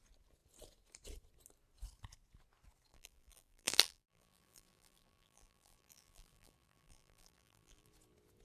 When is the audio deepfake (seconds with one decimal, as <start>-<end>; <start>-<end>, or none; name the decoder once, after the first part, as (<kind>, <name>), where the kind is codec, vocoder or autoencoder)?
2.9-7.9 (vocoder, BigVGAN v2)